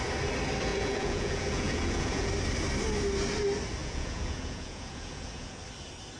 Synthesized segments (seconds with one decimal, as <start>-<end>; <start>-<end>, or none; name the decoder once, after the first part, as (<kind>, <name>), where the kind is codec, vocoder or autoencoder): 0.7-2.3 (vocoder, Vocos); 3.8-5.6